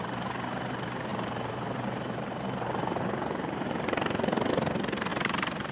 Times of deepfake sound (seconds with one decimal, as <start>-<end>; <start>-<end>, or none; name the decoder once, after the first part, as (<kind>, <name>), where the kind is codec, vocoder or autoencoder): 1.1-4.5 (vocoder, BigVGAN v2); 5.1-5.7